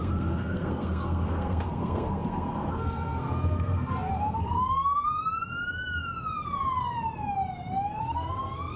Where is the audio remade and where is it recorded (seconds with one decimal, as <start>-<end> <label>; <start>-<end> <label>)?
0.0-5.1 remade; 5.1-8.0 recorded; 8.0-8.8 remade